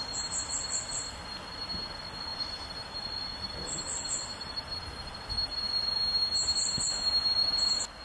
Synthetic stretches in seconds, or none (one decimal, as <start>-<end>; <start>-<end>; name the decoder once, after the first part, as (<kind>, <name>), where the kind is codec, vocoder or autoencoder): none